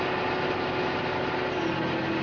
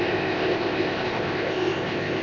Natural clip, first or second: first